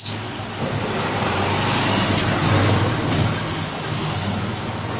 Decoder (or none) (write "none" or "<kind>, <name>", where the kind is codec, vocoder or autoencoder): none